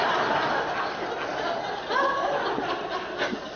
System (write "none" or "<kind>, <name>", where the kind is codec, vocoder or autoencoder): none